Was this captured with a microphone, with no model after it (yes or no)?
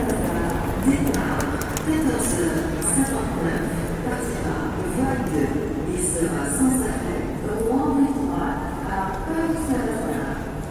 yes